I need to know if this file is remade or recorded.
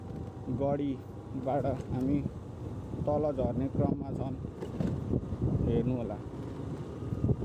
recorded